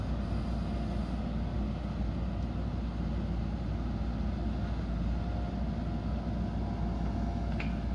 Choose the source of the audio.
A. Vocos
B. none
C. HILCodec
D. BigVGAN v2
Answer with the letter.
B